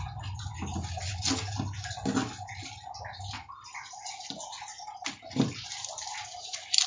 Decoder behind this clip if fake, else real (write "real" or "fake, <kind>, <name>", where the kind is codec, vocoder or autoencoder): real